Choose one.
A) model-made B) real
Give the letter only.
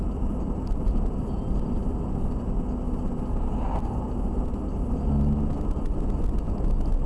B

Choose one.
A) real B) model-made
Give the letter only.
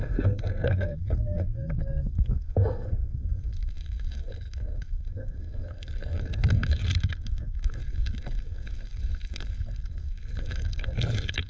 B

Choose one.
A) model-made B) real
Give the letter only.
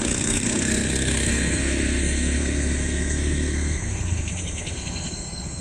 A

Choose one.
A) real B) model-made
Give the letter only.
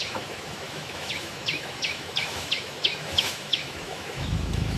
B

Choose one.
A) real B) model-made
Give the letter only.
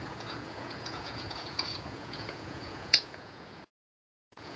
B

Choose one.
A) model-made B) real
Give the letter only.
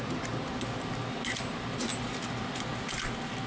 B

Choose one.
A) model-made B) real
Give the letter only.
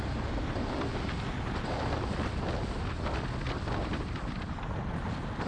B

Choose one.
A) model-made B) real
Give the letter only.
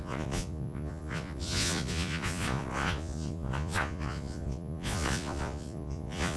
A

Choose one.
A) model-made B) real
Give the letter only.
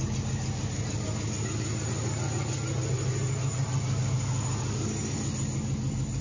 B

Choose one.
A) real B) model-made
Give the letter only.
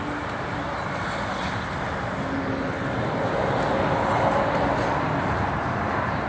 A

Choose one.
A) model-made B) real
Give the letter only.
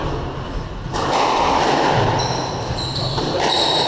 B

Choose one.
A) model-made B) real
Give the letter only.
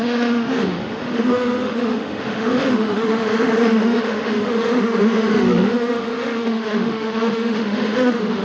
A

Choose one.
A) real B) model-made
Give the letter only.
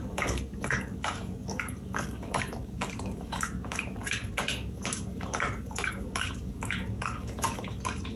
B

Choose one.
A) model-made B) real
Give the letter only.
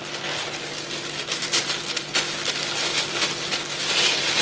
B